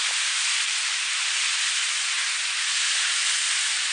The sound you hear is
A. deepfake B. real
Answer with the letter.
B